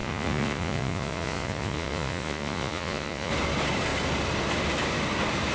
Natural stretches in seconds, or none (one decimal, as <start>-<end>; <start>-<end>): 3.3-5.5